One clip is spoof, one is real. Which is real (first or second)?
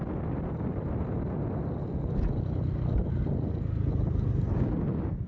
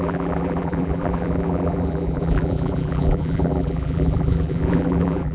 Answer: first